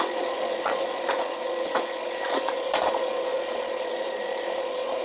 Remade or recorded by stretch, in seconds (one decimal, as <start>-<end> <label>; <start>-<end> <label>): 0.0-5.0 remade